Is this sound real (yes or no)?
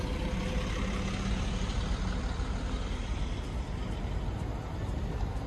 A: yes